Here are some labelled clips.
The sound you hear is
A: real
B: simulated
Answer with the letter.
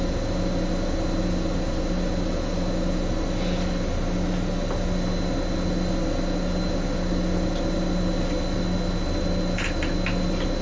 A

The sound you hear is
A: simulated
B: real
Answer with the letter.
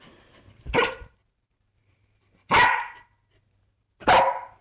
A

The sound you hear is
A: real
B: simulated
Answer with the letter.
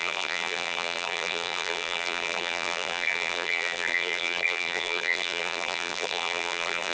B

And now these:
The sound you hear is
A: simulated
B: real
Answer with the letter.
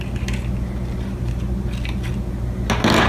B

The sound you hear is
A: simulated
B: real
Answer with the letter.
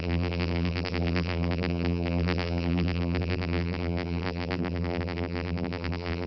A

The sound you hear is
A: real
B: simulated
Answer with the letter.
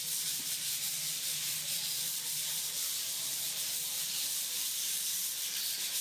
B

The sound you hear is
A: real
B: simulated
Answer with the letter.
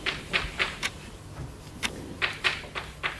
B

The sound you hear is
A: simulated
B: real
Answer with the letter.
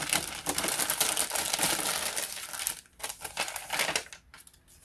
B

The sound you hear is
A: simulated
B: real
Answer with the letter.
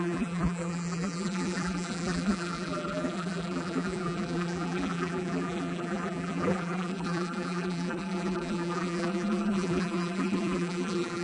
A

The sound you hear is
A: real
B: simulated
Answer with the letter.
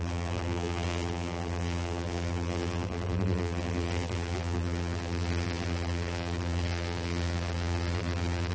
B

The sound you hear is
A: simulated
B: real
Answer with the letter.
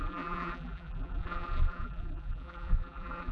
A